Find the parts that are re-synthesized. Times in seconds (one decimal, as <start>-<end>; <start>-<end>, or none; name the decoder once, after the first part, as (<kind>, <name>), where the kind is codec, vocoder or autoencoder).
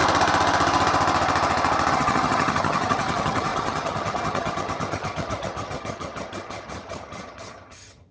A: 1.9-8.1 (vocoder, HiFi-GAN)